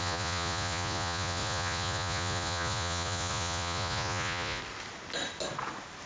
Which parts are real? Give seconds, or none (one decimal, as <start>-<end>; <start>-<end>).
4.6-6.1